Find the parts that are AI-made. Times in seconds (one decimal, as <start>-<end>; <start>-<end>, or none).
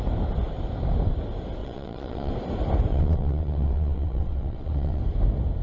1.6-2.3; 2.9-5.0